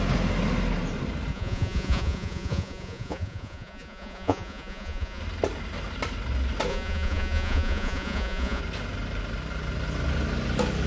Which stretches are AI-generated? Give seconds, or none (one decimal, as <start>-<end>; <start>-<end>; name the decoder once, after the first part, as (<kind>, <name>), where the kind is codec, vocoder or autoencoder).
1.3-5.2 (vocoder, Vocos); 6.7-8.6